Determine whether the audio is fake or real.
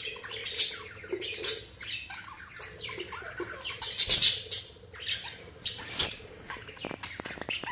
real